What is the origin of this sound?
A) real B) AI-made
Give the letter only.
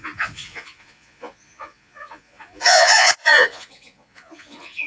B